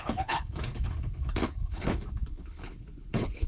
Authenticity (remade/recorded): remade